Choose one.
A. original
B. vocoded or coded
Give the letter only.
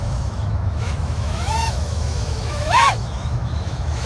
B